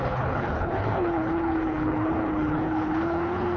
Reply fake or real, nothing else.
fake